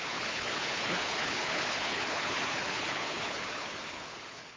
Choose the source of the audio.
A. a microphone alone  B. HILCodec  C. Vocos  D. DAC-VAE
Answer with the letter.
B